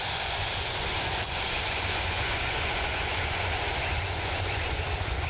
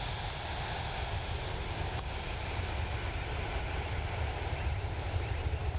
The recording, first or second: second